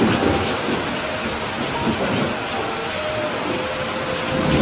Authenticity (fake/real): real